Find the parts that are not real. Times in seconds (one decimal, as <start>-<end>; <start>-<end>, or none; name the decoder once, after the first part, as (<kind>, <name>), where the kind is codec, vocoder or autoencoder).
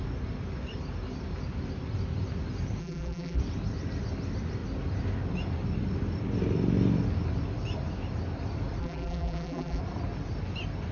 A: 2.8-3.4 (vocoder, BigVGAN v2); 8.8-9.8